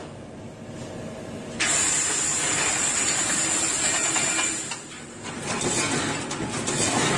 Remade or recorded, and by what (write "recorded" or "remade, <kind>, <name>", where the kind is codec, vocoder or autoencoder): recorded